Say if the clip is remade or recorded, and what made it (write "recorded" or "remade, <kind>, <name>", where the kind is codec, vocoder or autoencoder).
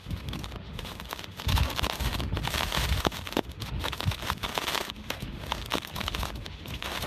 remade, autoencoder, DAC-VAE